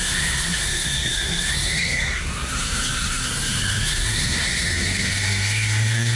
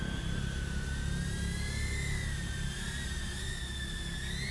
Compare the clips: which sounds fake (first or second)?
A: first